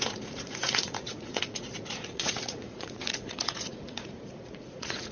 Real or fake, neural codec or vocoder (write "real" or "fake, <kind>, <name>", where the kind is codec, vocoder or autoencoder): fake, vocoder, Vocos